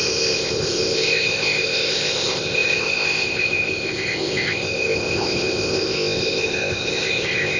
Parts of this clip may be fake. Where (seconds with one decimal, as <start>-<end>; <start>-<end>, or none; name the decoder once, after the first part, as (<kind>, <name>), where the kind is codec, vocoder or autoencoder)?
0.0-7.6 (codec, ZipCodec)